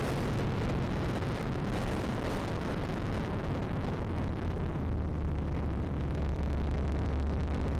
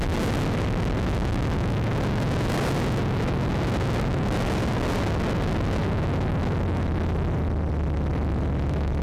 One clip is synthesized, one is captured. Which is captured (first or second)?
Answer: second